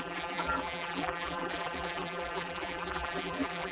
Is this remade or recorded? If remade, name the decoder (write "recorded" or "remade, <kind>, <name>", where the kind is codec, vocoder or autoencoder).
remade, vocoder, BigVGAN v2